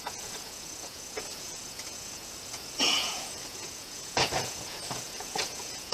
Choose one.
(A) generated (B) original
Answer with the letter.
A